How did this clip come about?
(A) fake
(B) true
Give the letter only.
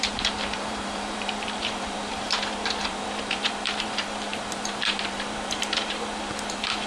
A